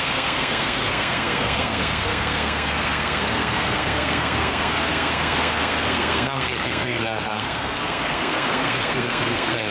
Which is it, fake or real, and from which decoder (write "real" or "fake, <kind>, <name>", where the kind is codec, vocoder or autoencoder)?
fake, codec, SNAC